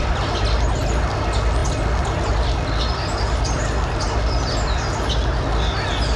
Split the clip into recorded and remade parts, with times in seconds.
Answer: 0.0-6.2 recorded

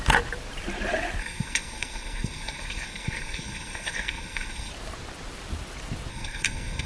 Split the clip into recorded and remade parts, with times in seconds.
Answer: 0.0-1.2 recorded; 1.2-4.7 remade; 4.7-6.1 recorded; 6.1-6.9 remade

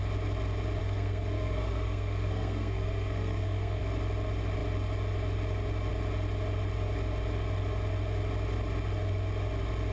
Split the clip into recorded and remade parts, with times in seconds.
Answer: 0.0-0.8 recorded; 0.8-3.8 remade; 3.8-9.9 recorded

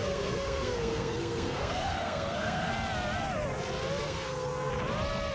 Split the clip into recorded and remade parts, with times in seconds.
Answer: 0.0-2.7 remade; 2.7-4.0 recorded; 4.0-4.7 remade; 4.7-5.3 recorded

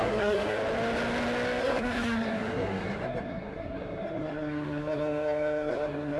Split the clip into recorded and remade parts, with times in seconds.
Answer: 0.0-0.6 remade; 0.6-1.6 recorded; 1.6-6.2 remade

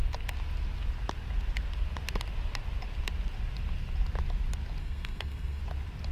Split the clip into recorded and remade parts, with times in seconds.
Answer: 0.0-4.8 recorded; 4.8-5.6 remade; 5.6-6.1 recorded